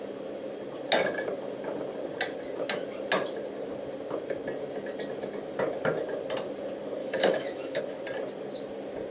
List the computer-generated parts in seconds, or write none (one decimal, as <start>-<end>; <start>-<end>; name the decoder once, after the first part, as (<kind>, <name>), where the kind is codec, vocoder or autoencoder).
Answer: 7.0-7.8 (autoencoder, DAC-VAE)